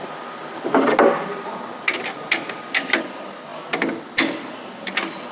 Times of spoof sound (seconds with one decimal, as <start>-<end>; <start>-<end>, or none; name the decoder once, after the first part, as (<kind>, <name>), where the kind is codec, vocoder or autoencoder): 1.3-2.6 (vocoder, BigVGAN v2)